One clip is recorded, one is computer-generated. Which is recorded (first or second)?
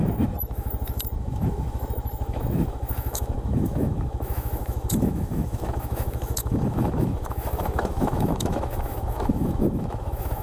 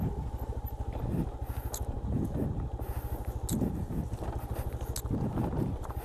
second